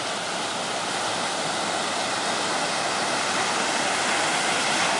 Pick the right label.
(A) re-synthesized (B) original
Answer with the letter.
B